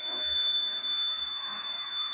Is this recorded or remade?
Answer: remade